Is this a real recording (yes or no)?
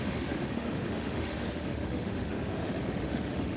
no